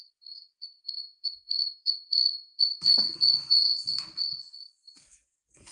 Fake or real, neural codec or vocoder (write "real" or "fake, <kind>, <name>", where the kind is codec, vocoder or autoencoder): fake, codec, SNAC